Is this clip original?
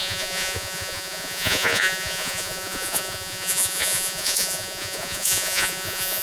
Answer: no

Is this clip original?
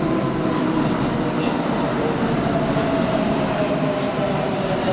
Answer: yes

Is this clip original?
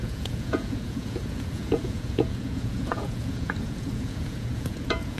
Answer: no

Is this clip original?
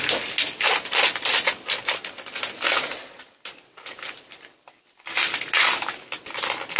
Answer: yes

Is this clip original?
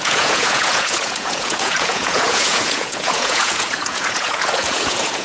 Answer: no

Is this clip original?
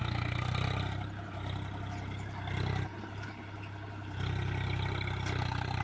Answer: yes